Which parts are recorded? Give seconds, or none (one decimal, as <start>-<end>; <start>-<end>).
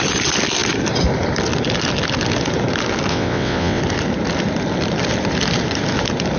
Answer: 0.0-3.1; 3.8-6.4